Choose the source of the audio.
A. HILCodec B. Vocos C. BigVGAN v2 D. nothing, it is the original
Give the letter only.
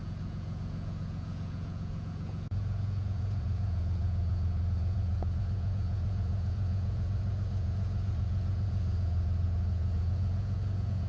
B